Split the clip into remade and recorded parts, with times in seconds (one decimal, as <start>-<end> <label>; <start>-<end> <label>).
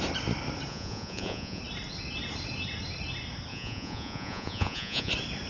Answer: 0.0-0.7 recorded; 0.7-1.6 remade; 1.6-3.5 recorded; 3.5-5.1 remade; 5.1-5.5 recorded